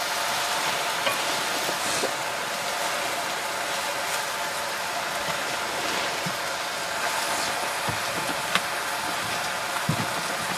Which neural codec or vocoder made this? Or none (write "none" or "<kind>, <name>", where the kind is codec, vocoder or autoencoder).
none